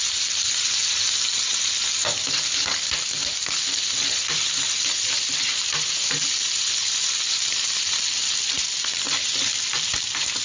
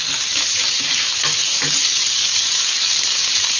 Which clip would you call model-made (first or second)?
second